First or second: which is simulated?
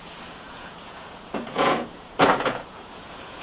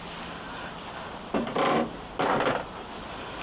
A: first